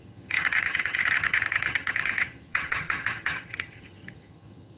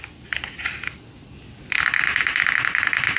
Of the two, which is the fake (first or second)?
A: first